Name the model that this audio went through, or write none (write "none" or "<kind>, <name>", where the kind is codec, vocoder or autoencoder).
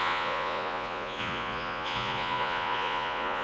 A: vocoder, Vocos